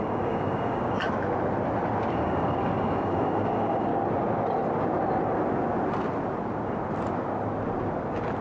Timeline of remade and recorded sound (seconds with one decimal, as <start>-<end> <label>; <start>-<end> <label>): 0.0-1.0 remade; 1.0-2.1 recorded; 2.1-3.9 remade; 3.9-8.4 recorded